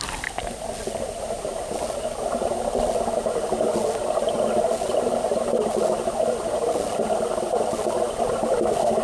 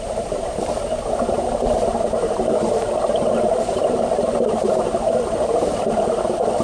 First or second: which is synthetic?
second